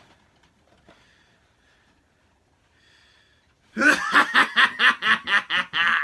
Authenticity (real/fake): fake